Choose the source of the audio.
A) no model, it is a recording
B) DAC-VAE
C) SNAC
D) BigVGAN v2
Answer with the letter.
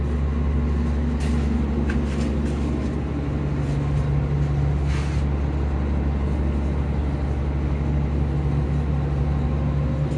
A